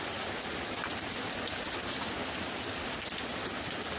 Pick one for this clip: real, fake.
real